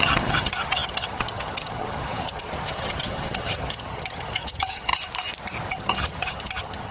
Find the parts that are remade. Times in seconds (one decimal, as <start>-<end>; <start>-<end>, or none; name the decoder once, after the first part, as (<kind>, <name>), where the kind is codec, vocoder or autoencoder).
0.0-4.9 (vocoder, HiFi-GAN); 5.7-6.9